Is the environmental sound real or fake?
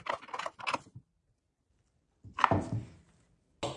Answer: real